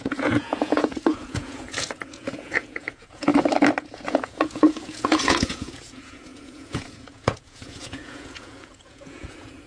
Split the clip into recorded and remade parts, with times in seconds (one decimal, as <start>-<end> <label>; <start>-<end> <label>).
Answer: 0.0-3.3 remade; 3.3-3.8 recorded; 3.8-9.7 remade